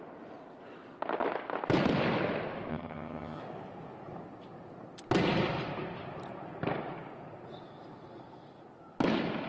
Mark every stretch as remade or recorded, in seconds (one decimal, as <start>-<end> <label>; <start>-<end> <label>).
0.0-2.7 recorded; 2.7-3.4 remade; 3.4-9.5 recorded